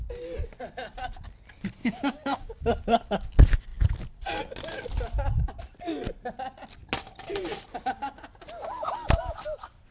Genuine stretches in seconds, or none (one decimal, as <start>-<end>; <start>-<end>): 0.0-1.8; 2.6-9.9